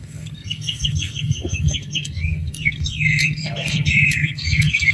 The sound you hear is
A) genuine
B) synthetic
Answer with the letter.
B